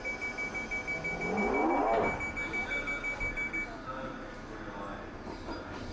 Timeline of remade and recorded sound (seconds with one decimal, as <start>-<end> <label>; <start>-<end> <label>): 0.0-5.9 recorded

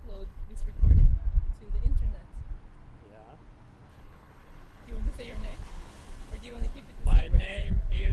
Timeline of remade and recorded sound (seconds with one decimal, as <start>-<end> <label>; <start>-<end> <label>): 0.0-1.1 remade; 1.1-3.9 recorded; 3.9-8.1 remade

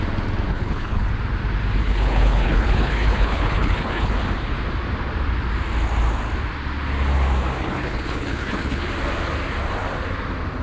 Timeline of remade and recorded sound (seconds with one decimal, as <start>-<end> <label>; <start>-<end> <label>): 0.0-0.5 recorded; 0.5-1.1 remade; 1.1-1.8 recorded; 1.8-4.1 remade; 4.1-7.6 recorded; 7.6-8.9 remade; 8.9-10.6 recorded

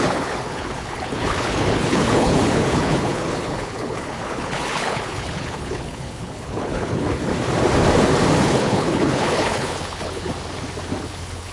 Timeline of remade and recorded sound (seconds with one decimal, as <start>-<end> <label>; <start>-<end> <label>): 0.0-7.3 remade; 7.3-8.4 recorded; 8.4-10.3 remade; 10.3-11.0 recorded; 11.0-11.5 remade

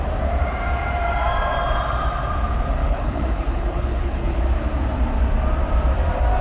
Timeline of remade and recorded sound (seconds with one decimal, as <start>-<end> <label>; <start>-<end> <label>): 0.0-2.8 recorded; 2.8-4.4 remade; 4.4-6.4 recorded

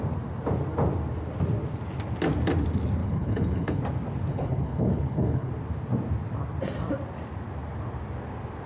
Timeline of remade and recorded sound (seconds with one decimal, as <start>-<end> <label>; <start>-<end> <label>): 0.0-3.0 recorded; 3.0-3.8 remade; 3.8-4.3 recorded; 4.3-5.5 remade; 5.5-8.7 recorded

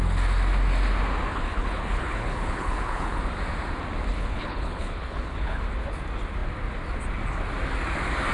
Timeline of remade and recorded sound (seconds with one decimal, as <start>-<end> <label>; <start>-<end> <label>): 0.0-1.3 recorded; 1.3-3.2 remade; 3.2-4.1 recorded; 4.1-5.6 remade; 5.6-8.3 recorded

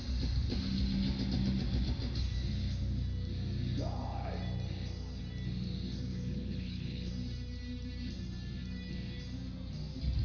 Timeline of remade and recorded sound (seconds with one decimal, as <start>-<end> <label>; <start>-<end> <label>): 0.0-6.1 recorded; 6.1-7.1 remade; 7.1-10.2 recorded